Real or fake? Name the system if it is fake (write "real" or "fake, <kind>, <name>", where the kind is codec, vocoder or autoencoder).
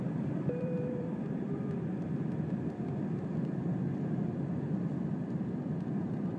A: fake, vocoder, BigVGAN v2